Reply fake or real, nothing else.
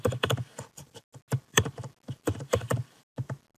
real